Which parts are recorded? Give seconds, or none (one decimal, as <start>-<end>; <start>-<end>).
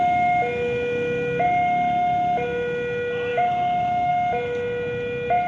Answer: 0.0-3.3; 4.1-5.5